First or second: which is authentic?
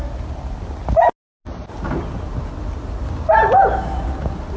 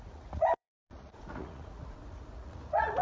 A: first